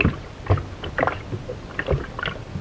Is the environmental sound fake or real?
real